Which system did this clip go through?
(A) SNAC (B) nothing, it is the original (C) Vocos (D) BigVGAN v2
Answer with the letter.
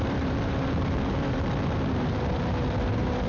D